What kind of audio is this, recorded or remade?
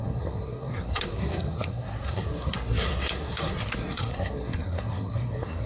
remade